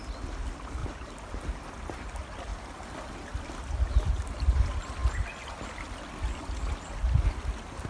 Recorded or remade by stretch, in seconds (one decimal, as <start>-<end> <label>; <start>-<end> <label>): 0.0-7.9 recorded